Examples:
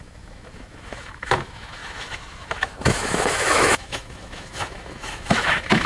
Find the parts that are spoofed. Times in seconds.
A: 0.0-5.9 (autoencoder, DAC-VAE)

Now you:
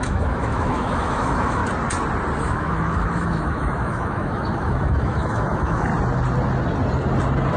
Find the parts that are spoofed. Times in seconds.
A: 0.0-1.6 (autoencoder, DAC-VAE); 2.4-5.9

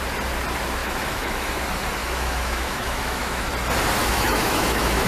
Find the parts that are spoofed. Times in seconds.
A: 0.8-1.6 (autoencoder, DAC-VAE); 2.0-3.5; 4.0-5.1

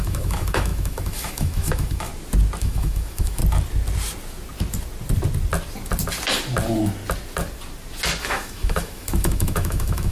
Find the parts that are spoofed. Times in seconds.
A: 0.0-2.1 (autoencoder, DAC-VAE); 2.6-3.4; 8.2-10.1

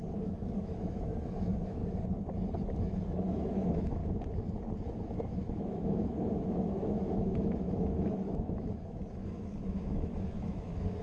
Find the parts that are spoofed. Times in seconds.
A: 0.0-1.8 (autoencoder, DAC-VAE); 2.8-4.0; 5.5-11.0

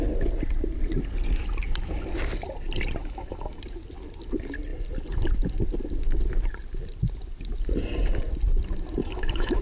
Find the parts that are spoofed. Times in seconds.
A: 3.0-3.6 (autoencoder, DAC-VAE); 9.0-9.6

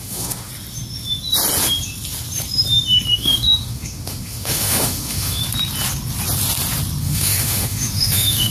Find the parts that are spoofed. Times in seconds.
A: 0.0-0.5 (autoencoder, DAC-VAE); 3.1-5.4; 7.0-8.5

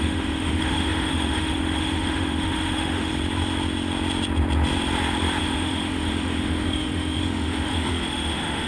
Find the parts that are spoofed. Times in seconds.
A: 0.0-3.1 (autoencoder, DAC-VAE); 5.4-8.7